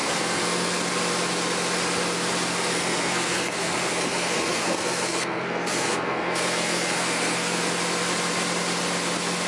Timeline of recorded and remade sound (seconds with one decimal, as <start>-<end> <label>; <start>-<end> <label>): 0.0-0.8 remade; 0.8-2.7 recorded; 2.7-7.6 remade; 7.6-9.5 recorded